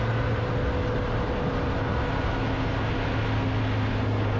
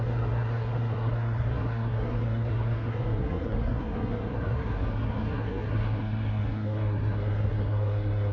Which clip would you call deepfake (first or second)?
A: second